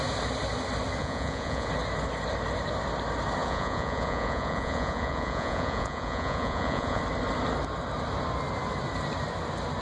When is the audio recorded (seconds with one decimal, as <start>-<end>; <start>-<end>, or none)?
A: 0.0-1.0; 1.7-3.4; 7.0-9.8